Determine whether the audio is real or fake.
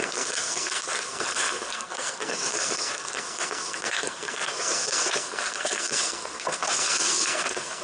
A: fake